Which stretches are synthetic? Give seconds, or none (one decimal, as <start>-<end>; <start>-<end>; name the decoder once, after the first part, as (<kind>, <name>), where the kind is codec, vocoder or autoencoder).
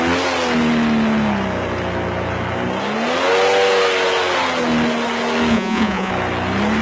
5.5-6.1 (vocoder, Vocos)